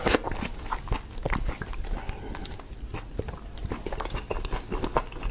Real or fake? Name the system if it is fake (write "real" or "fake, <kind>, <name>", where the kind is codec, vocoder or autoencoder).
real